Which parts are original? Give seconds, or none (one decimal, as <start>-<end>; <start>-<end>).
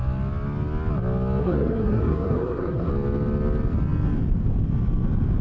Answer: 0.0-1.4; 2.9-5.4